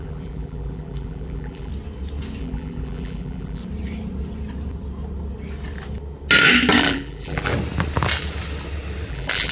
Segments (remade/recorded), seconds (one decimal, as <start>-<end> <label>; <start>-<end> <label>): 0.0-1.7 remade; 1.7-2.4 recorded; 2.4-3.6 remade; 3.6-6.8 recorded; 6.8-7.5 remade; 7.5-9.1 recorded; 9.1-9.5 remade